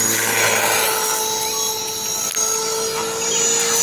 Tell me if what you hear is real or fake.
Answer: real